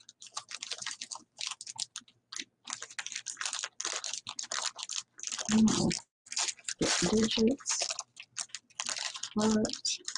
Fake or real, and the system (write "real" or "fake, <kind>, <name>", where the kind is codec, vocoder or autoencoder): real